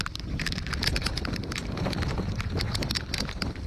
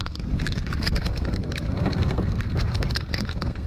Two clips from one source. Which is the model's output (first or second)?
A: second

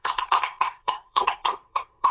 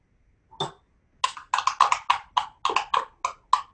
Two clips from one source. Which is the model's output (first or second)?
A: first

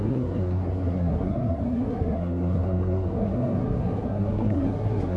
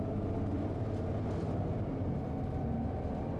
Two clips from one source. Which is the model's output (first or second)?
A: first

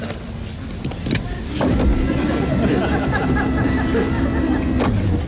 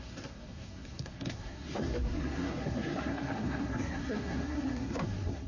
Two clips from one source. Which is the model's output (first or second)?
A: second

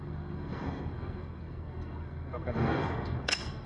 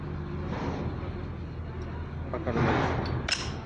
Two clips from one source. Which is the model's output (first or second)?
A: first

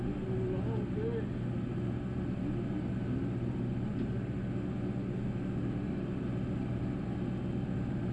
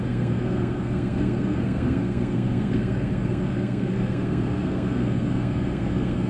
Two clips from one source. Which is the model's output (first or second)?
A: second